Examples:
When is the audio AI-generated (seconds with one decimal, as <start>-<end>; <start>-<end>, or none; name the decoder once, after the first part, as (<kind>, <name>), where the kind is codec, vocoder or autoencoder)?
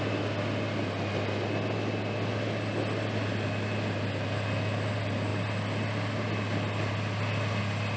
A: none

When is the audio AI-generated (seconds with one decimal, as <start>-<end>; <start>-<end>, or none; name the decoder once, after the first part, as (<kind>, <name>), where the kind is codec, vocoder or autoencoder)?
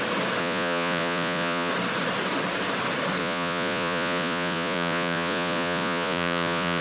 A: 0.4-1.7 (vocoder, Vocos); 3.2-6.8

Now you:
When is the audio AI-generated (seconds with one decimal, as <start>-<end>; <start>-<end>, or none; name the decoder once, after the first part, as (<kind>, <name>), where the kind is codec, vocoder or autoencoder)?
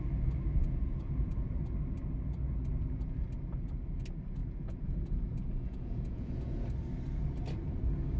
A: 0.6-1.5 (vocoder, Vocos); 4.4-6.6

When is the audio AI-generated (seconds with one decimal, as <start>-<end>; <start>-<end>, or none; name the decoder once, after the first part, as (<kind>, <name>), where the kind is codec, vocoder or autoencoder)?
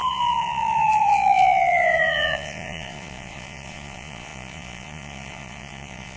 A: 0.0-6.2 (vocoder, Vocos)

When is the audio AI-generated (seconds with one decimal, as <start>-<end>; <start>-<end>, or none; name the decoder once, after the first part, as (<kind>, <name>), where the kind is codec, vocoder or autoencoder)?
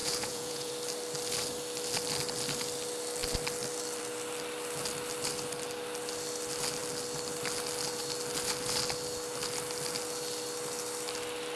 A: 0.0-0.7 (vocoder, Vocos)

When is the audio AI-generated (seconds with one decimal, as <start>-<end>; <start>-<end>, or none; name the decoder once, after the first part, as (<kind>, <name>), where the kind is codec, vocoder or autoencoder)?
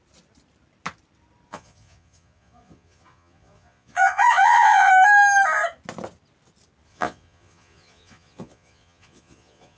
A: 1.5-4.9 (vocoder, Vocos); 6.9-9.8